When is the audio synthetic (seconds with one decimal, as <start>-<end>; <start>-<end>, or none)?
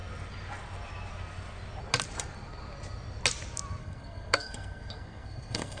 3.8-5.8